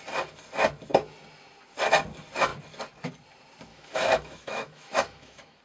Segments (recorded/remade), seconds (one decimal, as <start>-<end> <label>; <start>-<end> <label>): 0.0-3.7 recorded; 3.7-5.6 remade